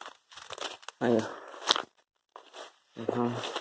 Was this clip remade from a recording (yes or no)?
no